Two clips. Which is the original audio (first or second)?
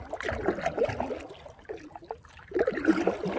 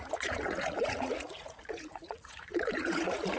first